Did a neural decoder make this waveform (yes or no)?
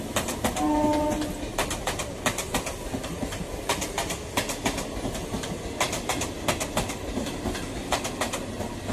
no